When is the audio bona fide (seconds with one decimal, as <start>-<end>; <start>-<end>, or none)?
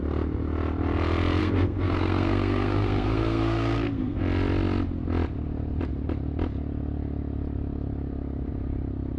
0.0-1.4; 4.2-9.2